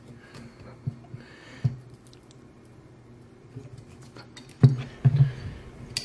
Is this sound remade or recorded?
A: recorded